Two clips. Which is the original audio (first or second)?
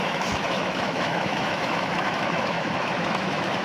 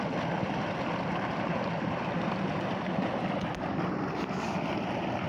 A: second